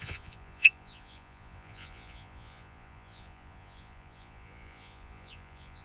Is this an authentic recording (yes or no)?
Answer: no